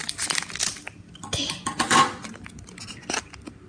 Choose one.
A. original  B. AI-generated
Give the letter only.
A